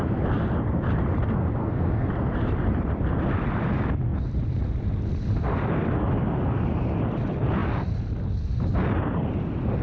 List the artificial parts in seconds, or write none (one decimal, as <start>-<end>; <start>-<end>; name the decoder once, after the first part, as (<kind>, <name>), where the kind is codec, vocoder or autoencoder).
1.6-2.1 (codec, SNAC)